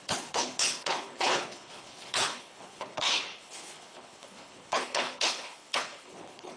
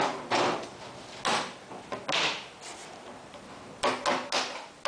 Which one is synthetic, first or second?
first